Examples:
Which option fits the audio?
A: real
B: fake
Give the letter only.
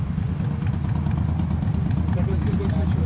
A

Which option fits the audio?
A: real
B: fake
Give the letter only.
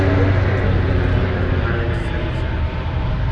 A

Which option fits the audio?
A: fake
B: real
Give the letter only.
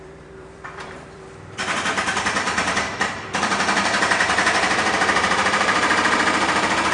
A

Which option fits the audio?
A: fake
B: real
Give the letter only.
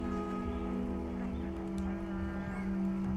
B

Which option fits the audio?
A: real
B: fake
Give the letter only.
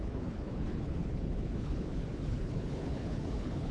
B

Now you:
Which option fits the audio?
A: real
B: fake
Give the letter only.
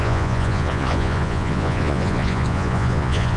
B